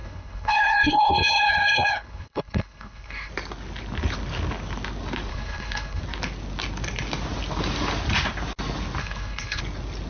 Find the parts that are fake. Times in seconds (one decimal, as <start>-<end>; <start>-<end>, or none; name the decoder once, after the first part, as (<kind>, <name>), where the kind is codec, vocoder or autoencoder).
0.0-3.3 (codec, HILCodec); 5.3-6.0; 9.0-9.6